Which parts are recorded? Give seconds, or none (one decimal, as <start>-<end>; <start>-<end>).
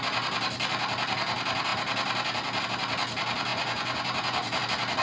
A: 0.0-3.5; 4.6-5.0